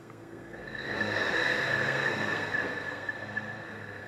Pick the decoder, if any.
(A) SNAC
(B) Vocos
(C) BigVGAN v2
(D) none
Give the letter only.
A